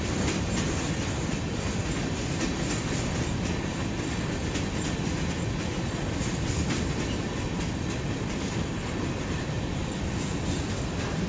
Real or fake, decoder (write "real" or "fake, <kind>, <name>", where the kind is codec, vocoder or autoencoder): real